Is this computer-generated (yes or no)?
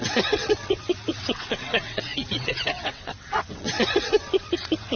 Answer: yes